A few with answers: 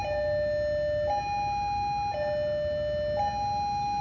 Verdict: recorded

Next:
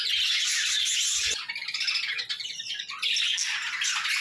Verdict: recorded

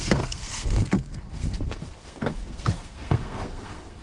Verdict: remade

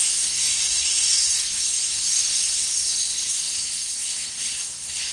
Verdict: remade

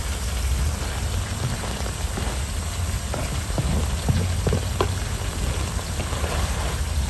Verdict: recorded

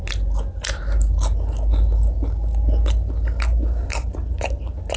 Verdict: recorded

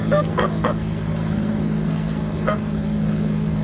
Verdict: remade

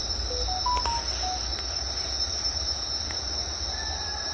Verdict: recorded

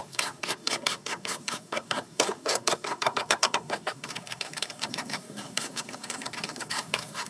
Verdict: remade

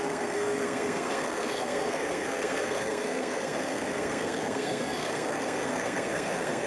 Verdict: remade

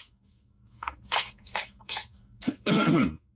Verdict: remade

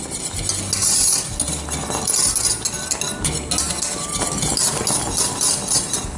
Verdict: recorded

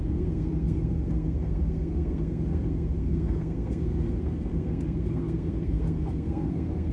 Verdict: remade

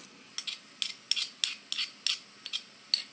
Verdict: recorded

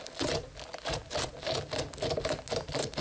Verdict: recorded